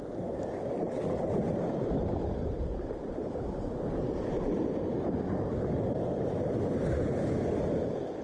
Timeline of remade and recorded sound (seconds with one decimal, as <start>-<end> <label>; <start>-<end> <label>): 0.0-8.2 recorded